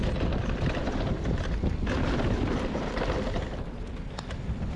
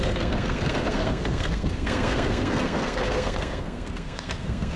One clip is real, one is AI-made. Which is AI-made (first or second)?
second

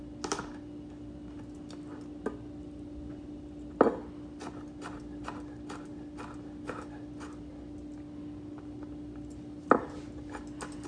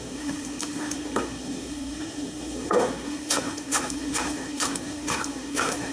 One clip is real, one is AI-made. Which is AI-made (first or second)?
second